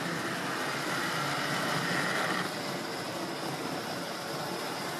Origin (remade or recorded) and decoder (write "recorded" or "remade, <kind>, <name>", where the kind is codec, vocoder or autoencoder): recorded